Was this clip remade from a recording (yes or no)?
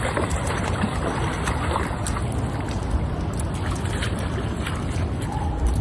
no